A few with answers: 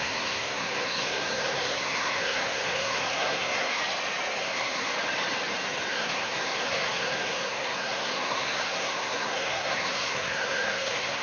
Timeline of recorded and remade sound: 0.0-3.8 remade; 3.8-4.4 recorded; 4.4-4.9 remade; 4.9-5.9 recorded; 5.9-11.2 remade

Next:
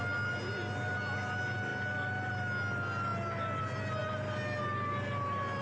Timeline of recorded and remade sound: 0.0-5.6 recorded

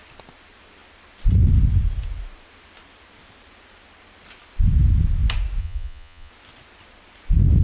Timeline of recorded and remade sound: 0.0-5.6 recorded; 5.6-6.3 remade; 6.3-7.6 recorded

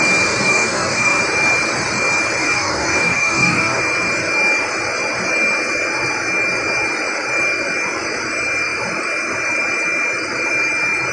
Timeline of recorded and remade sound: 0.0-0.4 recorded; 0.4-1.2 remade; 1.2-2.4 recorded; 2.4-3.8 remade; 3.8-11.1 recorded